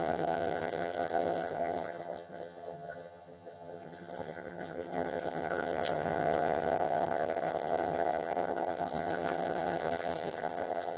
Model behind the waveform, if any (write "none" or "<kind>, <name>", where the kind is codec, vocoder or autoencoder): vocoder, HiFi-GAN